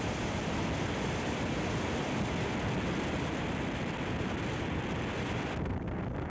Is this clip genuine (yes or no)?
yes